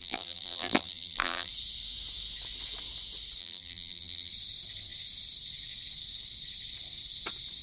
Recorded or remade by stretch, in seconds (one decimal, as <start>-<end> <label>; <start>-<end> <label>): 0.0-1.5 remade; 1.5-3.4 recorded; 3.4-4.3 remade; 4.3-7.6 recorded

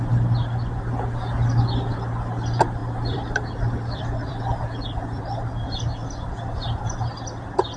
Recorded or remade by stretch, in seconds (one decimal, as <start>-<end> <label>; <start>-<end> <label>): 0.0-2.8 recorded; 2.8-5.2 remade; 5.2-7.8 recorded

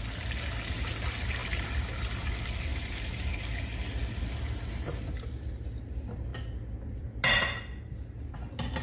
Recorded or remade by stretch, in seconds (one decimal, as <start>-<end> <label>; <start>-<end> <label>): 0.0-2.7 recorded; 2.7-3.4 remade; 3.4-8.8 recorded

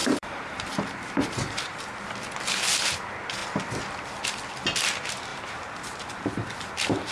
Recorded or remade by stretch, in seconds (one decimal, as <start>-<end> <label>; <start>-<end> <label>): 0.0-1.8 remade; 1.8-5.3 recorded; 5.3-6.2 remade; 6.2-7.1 recorded

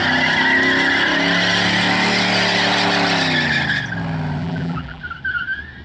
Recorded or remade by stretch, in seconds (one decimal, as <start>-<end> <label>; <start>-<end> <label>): 0.0-4.4 recorded; 4.4-5.0 remade; 5.0-5.8 recorded